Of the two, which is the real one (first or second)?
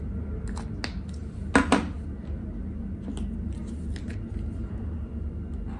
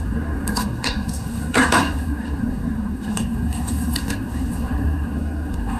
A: first